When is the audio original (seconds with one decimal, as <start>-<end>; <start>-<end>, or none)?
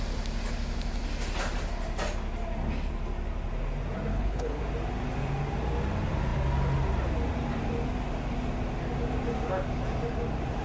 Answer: 0.0-4.1; 4.6-10.6